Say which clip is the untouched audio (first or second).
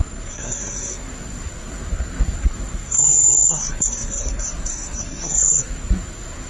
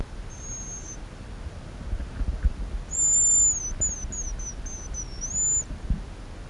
second